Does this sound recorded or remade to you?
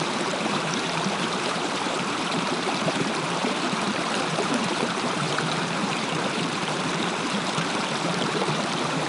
remade